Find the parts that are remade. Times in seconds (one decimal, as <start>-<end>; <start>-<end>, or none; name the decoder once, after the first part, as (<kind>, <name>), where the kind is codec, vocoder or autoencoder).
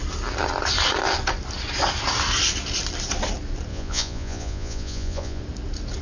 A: 3.7-5.4 (vocoder, Vocos)